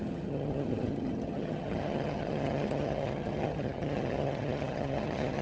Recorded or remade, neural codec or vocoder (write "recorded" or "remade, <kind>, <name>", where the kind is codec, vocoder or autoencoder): remade, vocoder, HiFi-GAN